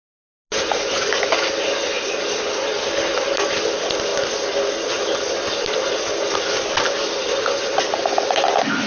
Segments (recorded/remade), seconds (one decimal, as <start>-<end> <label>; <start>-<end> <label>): 0.0-8.9 recorded